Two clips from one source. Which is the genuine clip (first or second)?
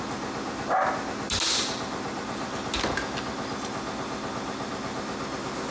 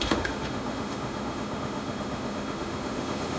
first